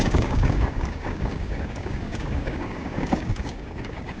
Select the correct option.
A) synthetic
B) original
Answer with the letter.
A